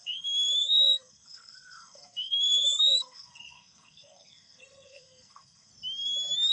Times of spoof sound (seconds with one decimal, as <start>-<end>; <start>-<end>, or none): 0.0-5.7